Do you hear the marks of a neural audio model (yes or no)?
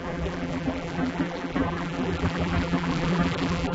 yes